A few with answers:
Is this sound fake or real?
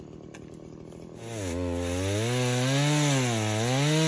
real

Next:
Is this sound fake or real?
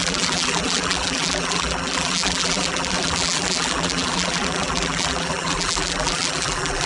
fake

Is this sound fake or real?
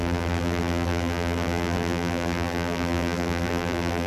fake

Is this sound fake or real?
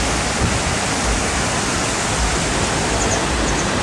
real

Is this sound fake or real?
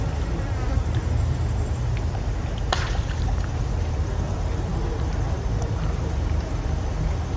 fake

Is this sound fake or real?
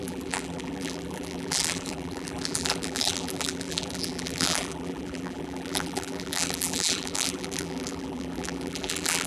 fake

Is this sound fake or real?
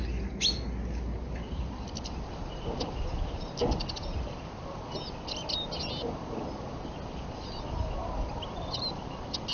real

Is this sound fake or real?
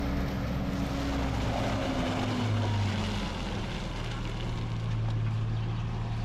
real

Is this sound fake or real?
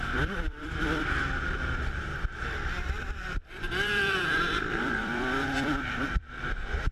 fake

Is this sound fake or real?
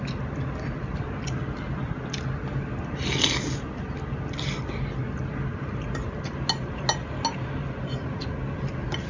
real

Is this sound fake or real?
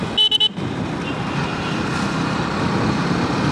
real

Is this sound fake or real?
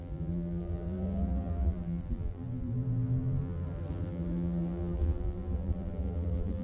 fake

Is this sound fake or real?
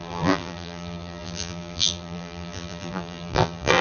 fake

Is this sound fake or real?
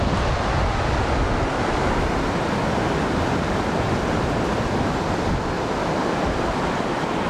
real